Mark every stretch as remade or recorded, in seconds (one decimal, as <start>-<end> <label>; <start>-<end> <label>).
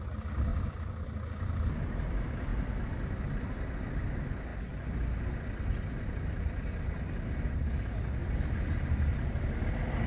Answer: 0.0-0.5 recorded; 0.5-2.1 remade; 2.1-2.5 recorded; 2.5-3.2 remade; 3.2-8.2 recorded; 8.2-10.1 remade